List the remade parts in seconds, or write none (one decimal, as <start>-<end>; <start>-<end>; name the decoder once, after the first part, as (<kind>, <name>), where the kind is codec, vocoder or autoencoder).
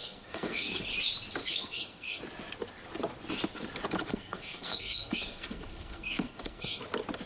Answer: 0.0-0.8 (codec, SNAC); 1.4-2.2; 4.1-6.8